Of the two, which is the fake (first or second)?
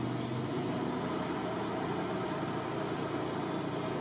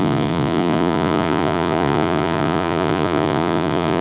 second